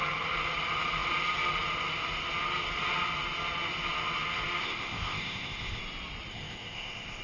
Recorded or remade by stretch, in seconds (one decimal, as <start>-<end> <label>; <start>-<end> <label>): 0.0-4.6 recorded; 4.6-5.8 remade; 5.8-6.3 recorded; 6.3-7.2 remade